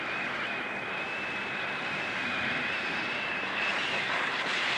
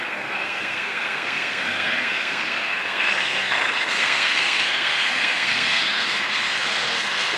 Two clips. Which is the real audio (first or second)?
first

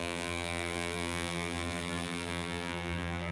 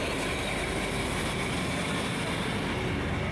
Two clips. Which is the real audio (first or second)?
second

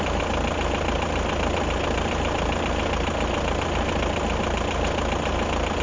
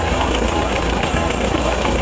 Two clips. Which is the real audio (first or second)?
first